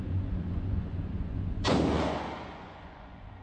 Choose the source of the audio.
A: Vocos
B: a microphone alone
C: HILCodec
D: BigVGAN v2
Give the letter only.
A